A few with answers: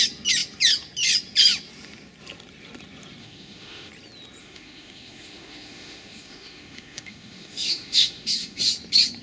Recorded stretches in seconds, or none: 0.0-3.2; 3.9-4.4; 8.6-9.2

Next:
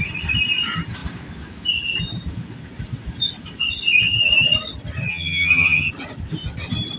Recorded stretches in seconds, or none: 0.0-5.1; 5.9-7.0

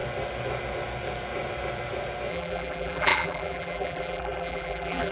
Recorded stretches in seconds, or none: 0.0-2.3